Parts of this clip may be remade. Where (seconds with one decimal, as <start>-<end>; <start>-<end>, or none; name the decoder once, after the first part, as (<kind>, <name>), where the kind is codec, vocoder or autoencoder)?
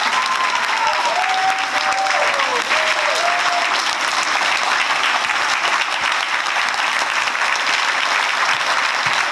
none